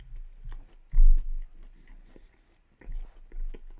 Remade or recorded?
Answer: recorded